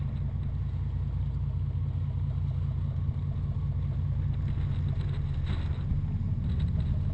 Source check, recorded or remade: recorded